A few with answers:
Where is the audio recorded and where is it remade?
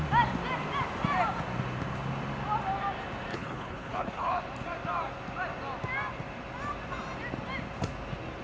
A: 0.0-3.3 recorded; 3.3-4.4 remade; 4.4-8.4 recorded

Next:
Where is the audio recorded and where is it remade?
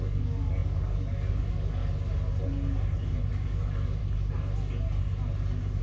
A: 0.0-1.8 remade; 1.8-3.3 recorded; 3.3-4.0 remade; 4.0-5.8 recorded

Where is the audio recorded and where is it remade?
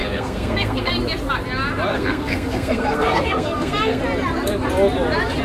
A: 0.0-0.9 remade; 0.9-1.9 recorded; 1.9-4.0 remade; 4.0-5.4 recorded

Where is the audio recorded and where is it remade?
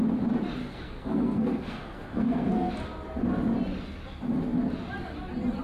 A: 0.0-0.6 recorded; 0.6-2.7 remade; 2.7-5.6 recorded